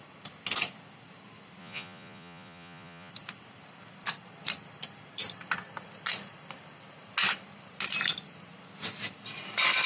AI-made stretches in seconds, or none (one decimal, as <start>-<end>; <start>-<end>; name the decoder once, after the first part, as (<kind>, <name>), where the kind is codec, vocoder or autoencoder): 1.6-3.1 (vocoder, Vocos)